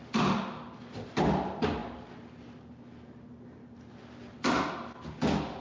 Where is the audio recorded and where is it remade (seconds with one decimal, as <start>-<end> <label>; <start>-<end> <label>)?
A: 0.0-5.6 recorded